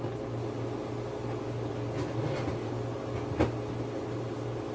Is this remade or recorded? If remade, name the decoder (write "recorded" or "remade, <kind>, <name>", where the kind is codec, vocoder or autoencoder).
recorded